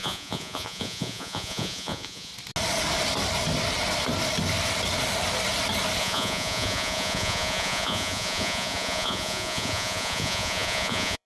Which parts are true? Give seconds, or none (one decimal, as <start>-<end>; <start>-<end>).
2.3-6.0

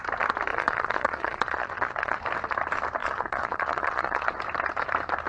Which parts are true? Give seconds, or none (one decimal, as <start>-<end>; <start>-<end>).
0.0-0.5; 2.2-3.0; 4.4-5.3